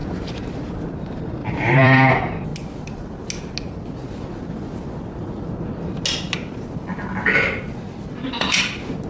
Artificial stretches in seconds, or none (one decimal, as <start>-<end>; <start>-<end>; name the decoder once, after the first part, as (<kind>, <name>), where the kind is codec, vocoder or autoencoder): 0.0-0.7 (vocoder, BigVGAN v2); 1.4-2.1